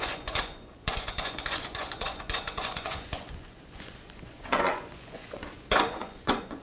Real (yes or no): no